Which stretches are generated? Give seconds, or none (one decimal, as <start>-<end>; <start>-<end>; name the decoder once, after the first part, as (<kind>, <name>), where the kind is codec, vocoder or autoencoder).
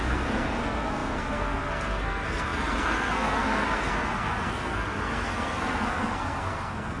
0.0-7.0 (codec, SNAC)